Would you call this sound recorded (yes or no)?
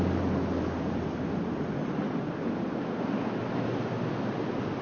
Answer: yes